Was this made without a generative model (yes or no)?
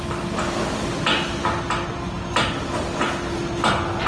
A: yes